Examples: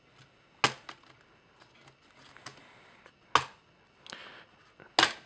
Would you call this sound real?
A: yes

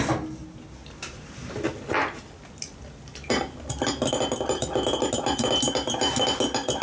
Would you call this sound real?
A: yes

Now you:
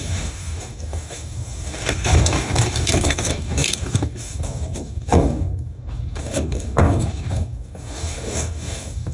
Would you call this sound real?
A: no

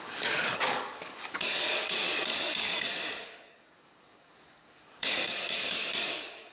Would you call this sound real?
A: no